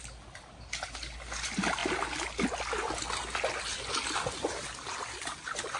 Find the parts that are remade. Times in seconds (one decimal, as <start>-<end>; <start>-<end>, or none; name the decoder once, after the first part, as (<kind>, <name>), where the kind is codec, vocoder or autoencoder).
none